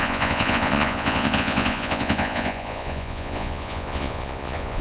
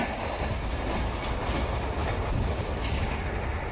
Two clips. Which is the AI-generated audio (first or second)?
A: first